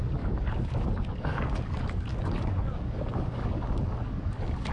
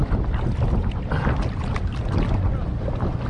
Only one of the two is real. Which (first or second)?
second